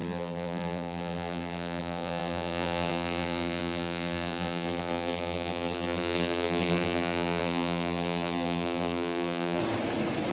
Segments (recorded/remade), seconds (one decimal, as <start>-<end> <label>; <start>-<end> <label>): 0.0-9.6 remade; 9.6-10.3 recorded